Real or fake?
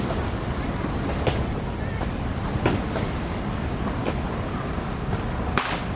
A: real